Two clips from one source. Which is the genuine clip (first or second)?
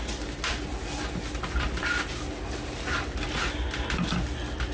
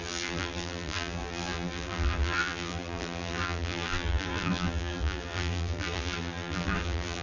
first